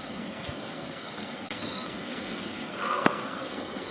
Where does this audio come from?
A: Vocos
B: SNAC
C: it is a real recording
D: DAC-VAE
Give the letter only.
B